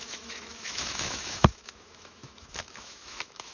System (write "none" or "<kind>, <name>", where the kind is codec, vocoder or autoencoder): autoencoder, DAC-VAE